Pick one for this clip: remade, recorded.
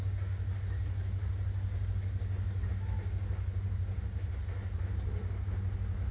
recorded